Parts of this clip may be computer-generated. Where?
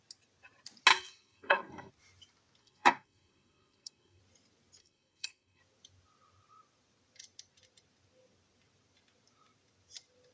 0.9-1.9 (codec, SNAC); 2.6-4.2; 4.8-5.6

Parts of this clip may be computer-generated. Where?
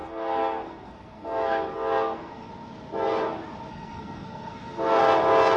0.0-2.5 (codec, SNAC); 3.7-5.0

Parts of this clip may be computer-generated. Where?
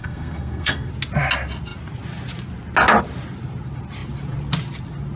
0.0-0.9 (codec, SNAC)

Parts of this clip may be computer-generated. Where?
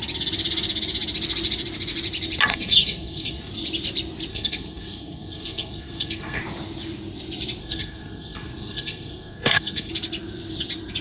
2.5-3.5 (codec, SNAC); 4.3-6.4; 7.6-9.9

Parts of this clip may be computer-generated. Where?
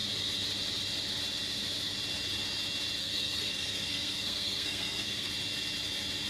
3.0-5.3 (codec, SNAC)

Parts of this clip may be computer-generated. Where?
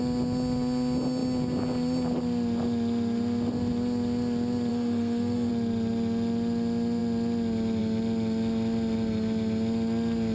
4.7-5.5 (codec, SNAC)